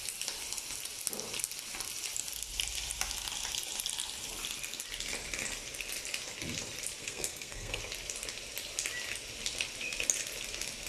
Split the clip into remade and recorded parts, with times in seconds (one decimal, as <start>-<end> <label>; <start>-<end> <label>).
0.0-7.0 recorded; 7.0-7.8 remade; 7.8-10.9 recorded